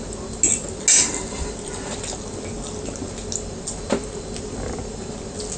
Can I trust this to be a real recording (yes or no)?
yes